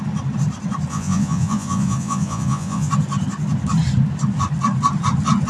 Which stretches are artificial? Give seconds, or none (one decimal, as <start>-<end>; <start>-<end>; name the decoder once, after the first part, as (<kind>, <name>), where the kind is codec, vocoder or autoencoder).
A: 0.9-2.9 (vocoder, Vocos)

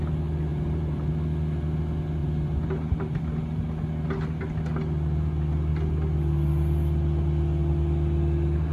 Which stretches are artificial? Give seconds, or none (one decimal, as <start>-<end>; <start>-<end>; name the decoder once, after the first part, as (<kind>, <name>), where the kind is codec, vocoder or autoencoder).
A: 0.5-1.1 (vocoder, BigVGAN v2); 2.2-3.2